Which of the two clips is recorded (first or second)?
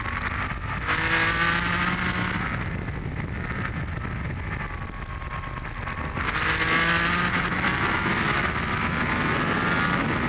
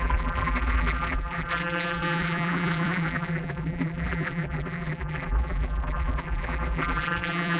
first